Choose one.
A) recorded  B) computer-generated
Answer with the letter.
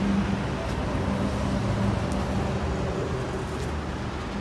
A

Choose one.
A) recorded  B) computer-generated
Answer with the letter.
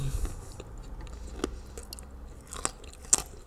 A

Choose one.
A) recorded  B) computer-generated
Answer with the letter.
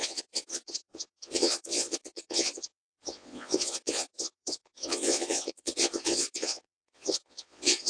B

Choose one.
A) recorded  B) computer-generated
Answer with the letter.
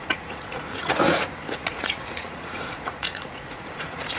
B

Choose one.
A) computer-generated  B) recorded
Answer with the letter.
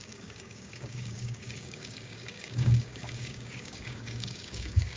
A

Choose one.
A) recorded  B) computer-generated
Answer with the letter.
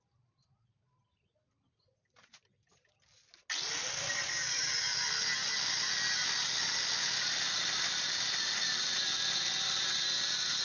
A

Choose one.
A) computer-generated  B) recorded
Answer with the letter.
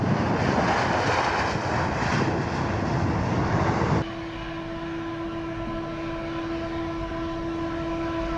B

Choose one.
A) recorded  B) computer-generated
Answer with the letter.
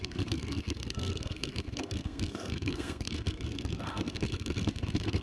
B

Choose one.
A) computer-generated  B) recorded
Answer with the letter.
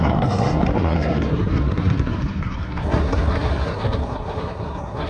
A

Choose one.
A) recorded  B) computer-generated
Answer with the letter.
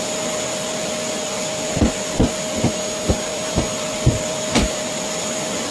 A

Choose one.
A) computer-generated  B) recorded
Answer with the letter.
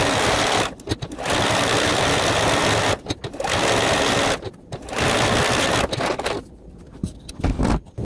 B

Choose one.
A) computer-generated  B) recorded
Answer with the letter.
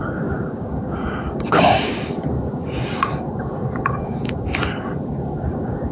A